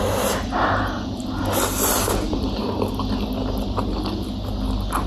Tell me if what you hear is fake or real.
real